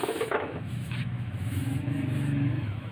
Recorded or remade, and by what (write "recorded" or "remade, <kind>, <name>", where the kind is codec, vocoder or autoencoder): remade, autoencoder, DAC-VAE